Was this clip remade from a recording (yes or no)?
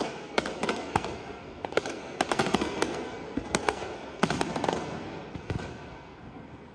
yes